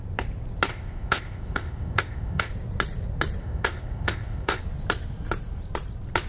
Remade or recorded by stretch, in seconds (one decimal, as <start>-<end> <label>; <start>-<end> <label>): 0.0-0.7 recorded; 0.7-2.5 remade; 2.5-3.4 recorded; 3.4-4.6 remade; 4.6-6.3 recorded